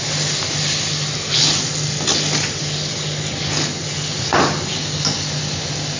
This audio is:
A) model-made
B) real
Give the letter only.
B